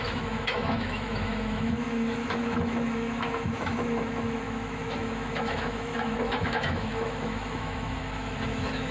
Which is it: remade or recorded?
remade